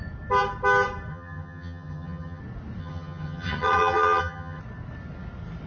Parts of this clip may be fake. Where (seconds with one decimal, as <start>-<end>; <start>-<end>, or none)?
1.1-2.4; 2.8-4.6

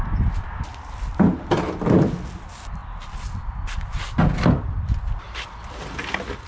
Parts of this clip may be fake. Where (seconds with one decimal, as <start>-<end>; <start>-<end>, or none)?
none